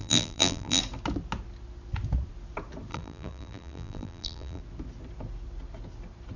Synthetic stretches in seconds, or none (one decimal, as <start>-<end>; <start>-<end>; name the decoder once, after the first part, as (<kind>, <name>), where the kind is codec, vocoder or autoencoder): 0.0-0.8 (vocoder, BigVGAN v2); 2.9-4.6